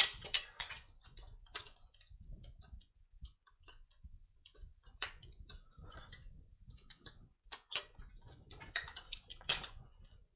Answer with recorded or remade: remade